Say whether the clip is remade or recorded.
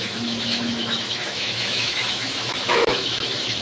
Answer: remade